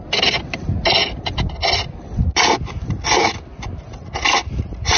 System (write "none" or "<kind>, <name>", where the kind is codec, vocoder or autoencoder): none